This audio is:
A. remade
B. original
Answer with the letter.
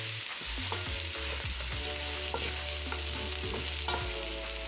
B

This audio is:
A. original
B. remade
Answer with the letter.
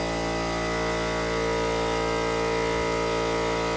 A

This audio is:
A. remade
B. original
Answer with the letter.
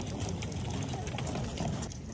B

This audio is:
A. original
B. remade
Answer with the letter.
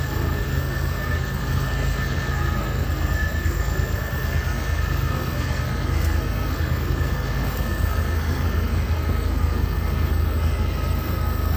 B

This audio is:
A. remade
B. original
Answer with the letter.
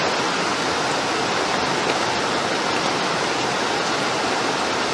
B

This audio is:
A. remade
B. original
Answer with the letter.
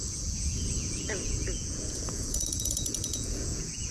A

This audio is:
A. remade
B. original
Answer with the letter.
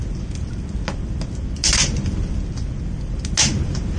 B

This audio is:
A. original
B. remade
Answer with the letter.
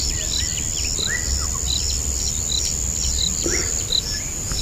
A